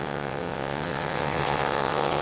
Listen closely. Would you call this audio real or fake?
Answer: fake